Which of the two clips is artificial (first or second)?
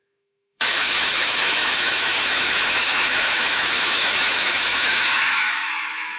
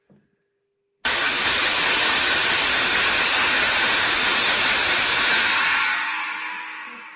first